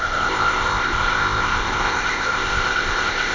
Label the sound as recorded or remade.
remade